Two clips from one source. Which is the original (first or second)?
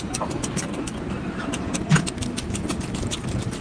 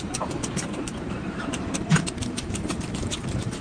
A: first